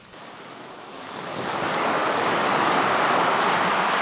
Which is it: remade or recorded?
remade